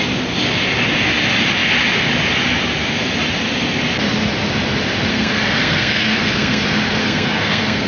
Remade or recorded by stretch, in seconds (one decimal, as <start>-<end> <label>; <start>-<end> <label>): 0.0-5.1 recorded; 5.1-6.6 remade; 6.6-7.0 recorded; 7.0-7.9 remade

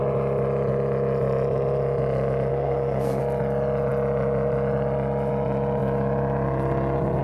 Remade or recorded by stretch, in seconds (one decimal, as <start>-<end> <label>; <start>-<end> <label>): 0.0-2.5 recorded; 2.5-3.2 remade; 3.2-7.2 recorded

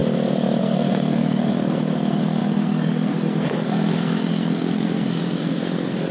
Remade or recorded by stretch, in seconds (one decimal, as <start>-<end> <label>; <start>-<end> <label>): 0.0-0.6 recorded; 0.6-6.1 remade